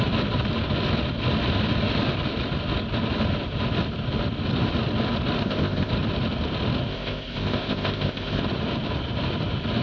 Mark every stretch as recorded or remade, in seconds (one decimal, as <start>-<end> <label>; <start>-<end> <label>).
0.0-5.4 recorded; 5.4-5.9 remade; 5.9-6.9 recorded; 6.9-8.4 remade; 8.4-9.8 recorded